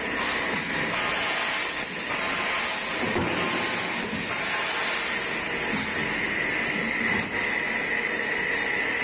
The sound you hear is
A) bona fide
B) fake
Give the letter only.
A